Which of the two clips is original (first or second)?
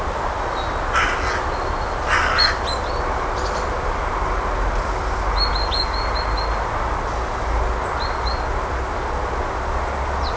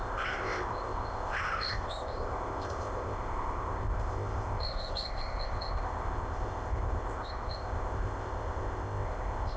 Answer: first